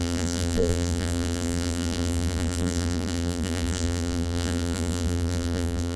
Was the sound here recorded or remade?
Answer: remade